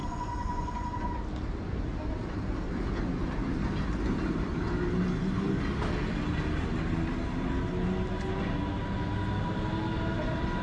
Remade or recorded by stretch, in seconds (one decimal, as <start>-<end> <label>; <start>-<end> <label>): 0.0-1.1 remade; 1.1-10.6 recorded